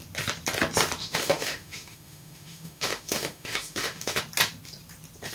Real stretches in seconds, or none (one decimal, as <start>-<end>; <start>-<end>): 0.0-1.0; 4.2-5.3